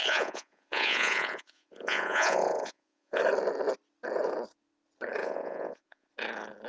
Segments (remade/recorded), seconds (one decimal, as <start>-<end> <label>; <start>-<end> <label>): 0.0-3.2 remade; 3.2-5.2 recorded; 5.2-6.1 remade; 6.1-6.7 recorded